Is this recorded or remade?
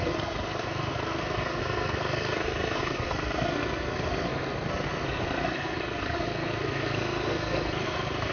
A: remade